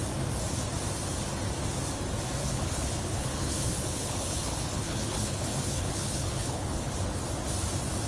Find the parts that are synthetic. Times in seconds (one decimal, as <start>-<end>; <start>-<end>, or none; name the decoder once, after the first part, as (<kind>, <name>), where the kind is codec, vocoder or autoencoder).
2.4-6.9 (codec, HILCodec)